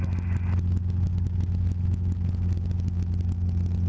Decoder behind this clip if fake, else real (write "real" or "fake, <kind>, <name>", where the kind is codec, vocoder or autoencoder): real